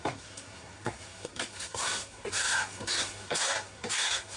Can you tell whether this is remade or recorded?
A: remade